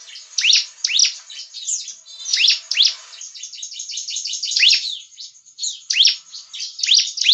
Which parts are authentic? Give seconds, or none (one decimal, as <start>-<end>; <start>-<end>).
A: 0.0-7.3